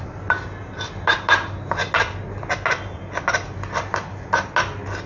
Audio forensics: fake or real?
real